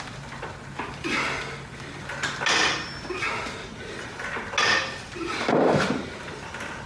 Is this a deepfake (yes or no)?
no